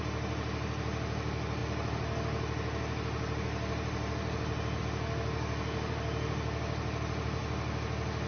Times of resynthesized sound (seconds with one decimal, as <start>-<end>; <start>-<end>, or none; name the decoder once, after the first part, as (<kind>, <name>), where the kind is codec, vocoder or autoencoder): none